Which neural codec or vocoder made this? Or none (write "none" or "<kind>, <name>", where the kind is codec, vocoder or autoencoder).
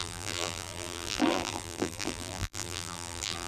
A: vocoder, BigVGAN v2